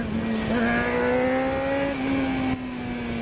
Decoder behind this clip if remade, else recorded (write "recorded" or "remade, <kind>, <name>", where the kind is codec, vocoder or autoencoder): recorded